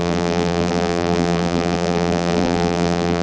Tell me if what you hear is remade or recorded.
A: remade